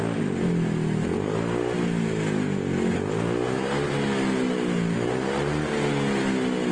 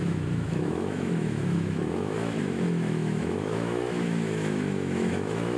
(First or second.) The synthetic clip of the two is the second